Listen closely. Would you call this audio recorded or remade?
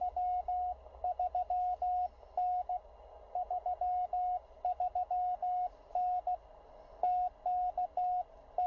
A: recorded